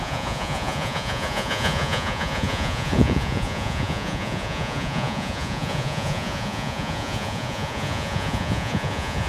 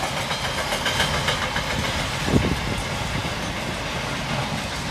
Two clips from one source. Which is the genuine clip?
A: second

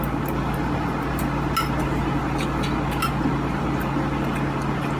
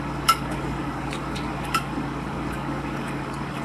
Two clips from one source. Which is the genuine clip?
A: first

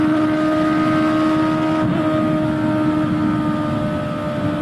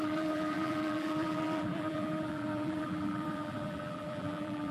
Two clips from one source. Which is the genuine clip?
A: first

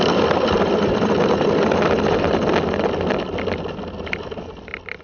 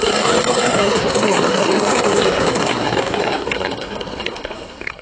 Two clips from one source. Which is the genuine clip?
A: first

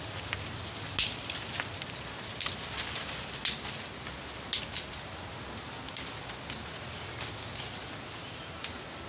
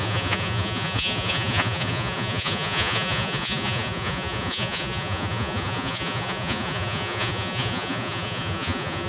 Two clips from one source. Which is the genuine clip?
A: first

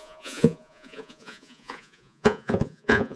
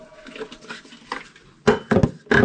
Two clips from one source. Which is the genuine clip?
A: second